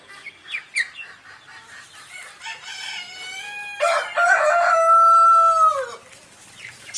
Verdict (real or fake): real